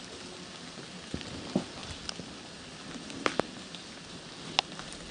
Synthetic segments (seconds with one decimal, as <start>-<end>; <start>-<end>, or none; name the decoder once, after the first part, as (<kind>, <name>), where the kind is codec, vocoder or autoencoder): none